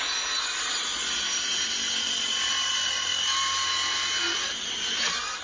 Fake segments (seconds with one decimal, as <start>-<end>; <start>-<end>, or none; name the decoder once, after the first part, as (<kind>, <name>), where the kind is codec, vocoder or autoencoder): 0.0-0.9 (vocoder, BigVGAN v2); 2.7-3.1; 4.8-5.4